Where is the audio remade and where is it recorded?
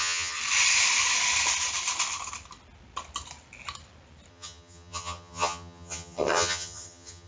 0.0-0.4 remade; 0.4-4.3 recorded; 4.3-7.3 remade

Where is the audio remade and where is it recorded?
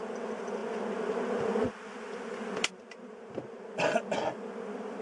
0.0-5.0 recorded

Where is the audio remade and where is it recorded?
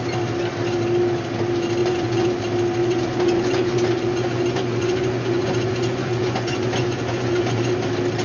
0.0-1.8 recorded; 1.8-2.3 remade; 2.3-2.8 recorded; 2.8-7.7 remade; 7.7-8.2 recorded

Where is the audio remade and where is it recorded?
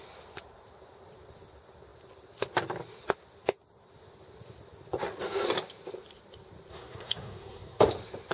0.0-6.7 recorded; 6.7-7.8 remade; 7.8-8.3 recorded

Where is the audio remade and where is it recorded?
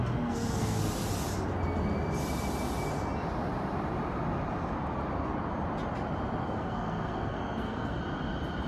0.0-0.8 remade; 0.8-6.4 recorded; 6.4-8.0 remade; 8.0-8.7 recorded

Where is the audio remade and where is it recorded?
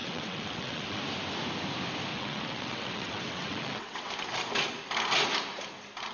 0.0-1.0 remade; 1.0-2.1 recorded; 2.1-4.1 remade; 4.1-6.1 recorded